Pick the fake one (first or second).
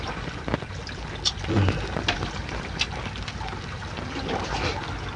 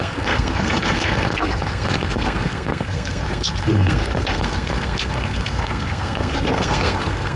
second